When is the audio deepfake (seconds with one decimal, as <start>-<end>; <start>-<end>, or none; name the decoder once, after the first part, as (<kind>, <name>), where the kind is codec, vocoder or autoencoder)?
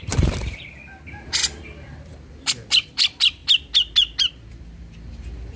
0.0-0.8 (vocoder, BigVGAN v2); 1.6-3.4; 4.3-5.6